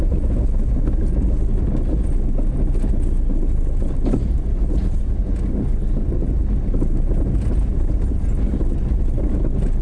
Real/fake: real